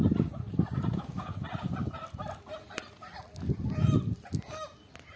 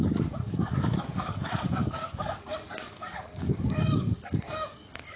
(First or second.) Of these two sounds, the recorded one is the first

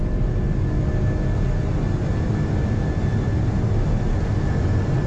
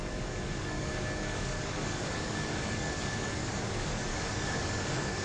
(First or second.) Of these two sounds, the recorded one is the first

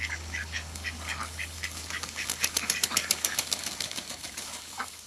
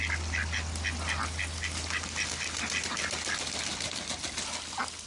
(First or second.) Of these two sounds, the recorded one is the second